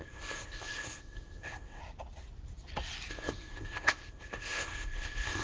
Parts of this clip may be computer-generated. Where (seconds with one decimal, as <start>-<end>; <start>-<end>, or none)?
0.0-1.8; 3.1-5.4